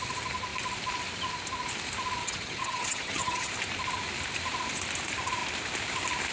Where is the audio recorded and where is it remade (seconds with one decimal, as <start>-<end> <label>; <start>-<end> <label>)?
0.0-2.2 recorded; 2.2-3.5 remade; 3.5-6.3 recorded